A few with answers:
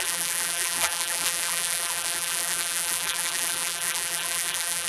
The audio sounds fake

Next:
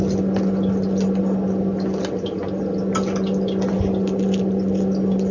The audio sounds real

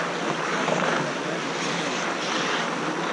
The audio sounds fake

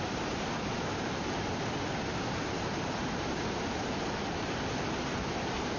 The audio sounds fake